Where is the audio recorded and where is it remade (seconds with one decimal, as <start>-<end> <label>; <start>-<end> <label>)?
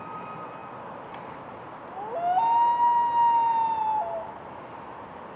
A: 0.0-5.4 recorded